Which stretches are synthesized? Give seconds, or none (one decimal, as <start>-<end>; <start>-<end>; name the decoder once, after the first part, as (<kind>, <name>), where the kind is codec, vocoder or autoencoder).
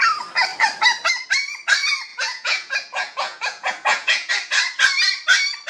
2.1-4.3 (vocoder, Vocos)